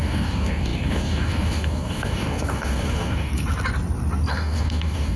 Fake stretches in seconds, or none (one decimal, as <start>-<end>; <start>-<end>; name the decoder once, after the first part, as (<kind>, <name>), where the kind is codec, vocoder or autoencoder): 0.0-3.3 (codec, DAC); 4.3-5.2